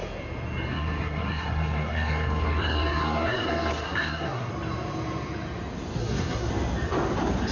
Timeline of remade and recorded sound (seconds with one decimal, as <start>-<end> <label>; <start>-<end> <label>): 0.0-0.7 recorded; 0.7-4.5 remade; 4.5-6.0 recorded; 6.0-6.5 remade; 6.5-7.5 recorded